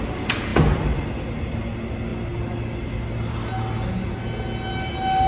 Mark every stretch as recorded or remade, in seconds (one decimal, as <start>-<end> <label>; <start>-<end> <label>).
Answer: 0.0-5.3 recorded